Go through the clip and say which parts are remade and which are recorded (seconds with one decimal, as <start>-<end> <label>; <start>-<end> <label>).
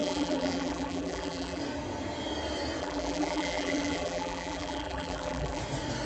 0.0-1.6 remade; 1.6-2.8 recorded; 2.8-5.6 remade; 5.6-6.1 recorded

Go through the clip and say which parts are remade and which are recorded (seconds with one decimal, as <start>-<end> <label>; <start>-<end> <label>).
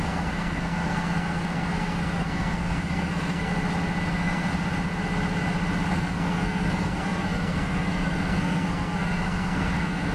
0.0-3.5 remade; 3.5-4.1 recorded; 4.1-4.5 remade; 4.5-5.9 recorded; 5.9-10.1 remade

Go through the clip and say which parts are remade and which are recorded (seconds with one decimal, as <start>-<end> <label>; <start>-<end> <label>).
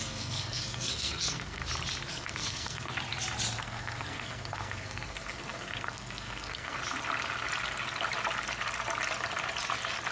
0.0-1.6 remade; 1.6-2.1 recorded; 2.1-2.9 remade; 2.9-3.6 recorded; 3.6-6.8 remade; 6.8-10.1 recorded